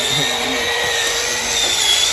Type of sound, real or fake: fake